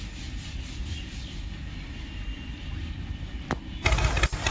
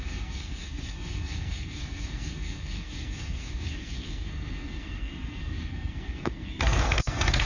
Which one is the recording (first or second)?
first